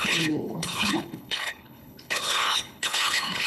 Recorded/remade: remade